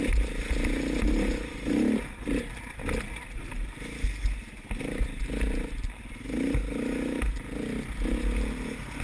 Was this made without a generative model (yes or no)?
yes